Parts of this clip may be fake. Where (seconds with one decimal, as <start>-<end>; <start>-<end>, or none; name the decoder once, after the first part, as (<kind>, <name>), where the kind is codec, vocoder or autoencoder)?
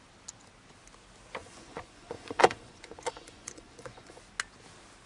1.4-4.2 (vocoder, Vocos)